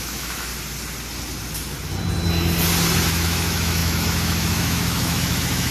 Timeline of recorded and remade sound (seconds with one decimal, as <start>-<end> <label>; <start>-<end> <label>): 0.0-0.5 remade; 0.5-3.1 recorded; 3.1-5.7 remade